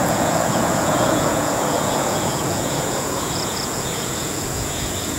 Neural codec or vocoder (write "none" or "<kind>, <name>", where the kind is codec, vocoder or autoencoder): vocoder, Vocos